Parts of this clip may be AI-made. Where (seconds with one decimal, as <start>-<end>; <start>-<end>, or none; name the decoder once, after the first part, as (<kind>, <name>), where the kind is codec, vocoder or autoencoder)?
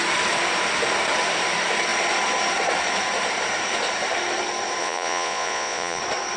4.8-6.0 (vocoder, Vocos)